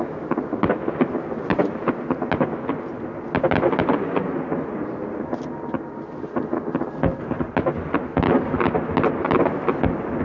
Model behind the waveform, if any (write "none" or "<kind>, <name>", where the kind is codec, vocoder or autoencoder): none